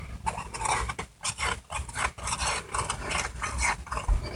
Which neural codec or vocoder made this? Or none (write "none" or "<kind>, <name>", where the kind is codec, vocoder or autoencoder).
none